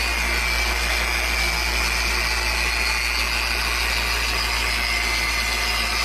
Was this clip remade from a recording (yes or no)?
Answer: no